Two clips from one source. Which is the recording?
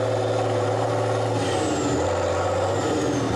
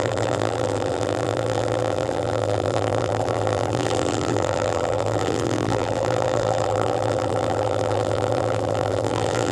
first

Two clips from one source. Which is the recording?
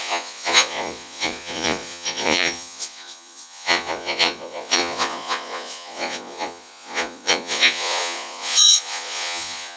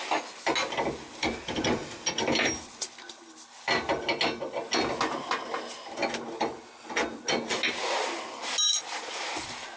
second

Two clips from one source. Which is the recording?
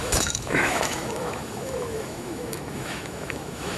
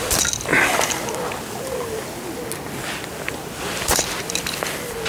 second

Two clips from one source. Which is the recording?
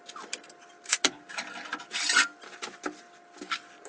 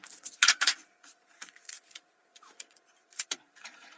first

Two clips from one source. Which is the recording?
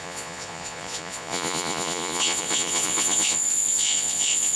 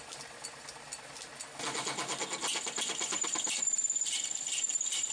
second